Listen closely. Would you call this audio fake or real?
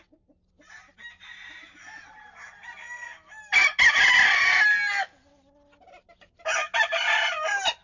real